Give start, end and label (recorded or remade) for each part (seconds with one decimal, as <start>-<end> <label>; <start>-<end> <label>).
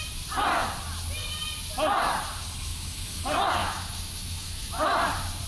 0.0-2.7 recorded; 2.7-3.2 remade; 3.2-3.6 recorded; 3.6-4.8 remade; 4.8-5.5 recorded